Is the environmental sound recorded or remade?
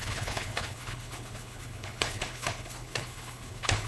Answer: remade